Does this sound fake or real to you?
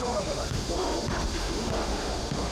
fake